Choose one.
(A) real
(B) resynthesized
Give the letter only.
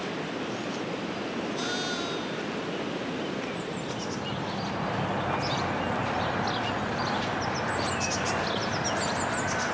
A